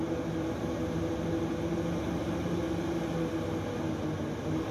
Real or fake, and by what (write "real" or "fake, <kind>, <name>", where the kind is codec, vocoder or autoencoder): real